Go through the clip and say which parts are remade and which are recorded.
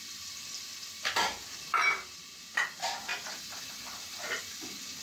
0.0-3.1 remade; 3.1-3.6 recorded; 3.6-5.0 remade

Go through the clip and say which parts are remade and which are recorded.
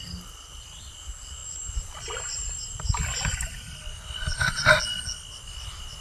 0.0-1.4 recorded; 1.4-4.8 remade; 4.8-6.0 recorded